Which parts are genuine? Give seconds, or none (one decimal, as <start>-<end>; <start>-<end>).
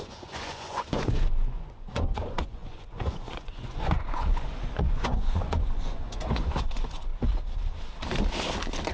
7.1-8.9